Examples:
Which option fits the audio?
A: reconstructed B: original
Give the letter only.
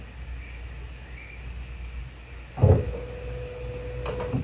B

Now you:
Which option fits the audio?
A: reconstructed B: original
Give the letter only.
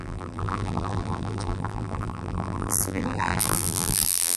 A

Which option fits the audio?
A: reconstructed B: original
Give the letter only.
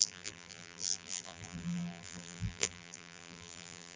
A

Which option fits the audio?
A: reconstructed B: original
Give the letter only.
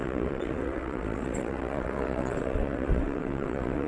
A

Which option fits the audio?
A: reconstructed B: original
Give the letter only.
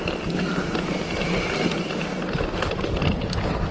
B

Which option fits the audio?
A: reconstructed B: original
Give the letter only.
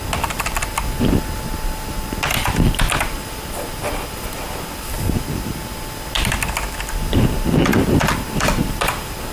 B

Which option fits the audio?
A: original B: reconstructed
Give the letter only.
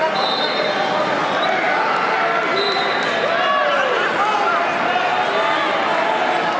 A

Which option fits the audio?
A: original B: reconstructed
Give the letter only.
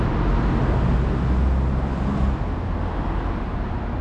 A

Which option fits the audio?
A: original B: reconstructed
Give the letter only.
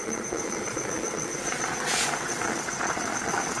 B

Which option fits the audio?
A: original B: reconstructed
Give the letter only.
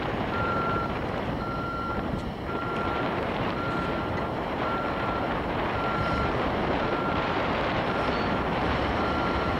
B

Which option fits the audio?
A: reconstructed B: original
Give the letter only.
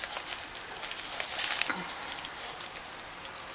B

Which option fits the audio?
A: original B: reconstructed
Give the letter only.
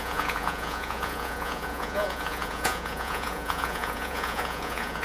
B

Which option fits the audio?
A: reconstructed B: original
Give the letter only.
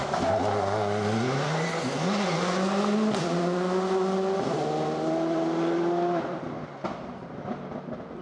B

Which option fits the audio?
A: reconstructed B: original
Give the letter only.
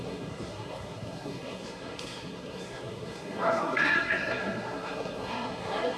A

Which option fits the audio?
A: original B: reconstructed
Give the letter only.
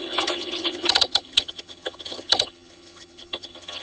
B